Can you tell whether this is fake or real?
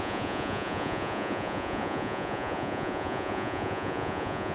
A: fake